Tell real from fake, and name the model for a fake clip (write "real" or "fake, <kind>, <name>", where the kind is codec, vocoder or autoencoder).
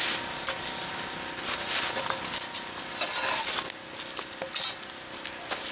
real